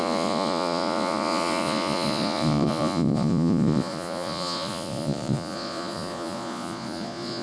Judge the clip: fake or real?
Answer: fake